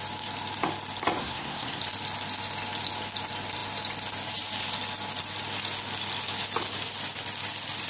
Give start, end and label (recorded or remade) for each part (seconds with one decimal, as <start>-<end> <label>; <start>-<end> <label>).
0.0-1.2 recorded; 1.2-1.8 remade; 1.8-7.9 recorded